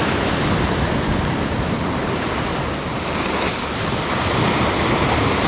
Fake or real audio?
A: real